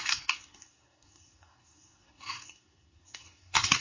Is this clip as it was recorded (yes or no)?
no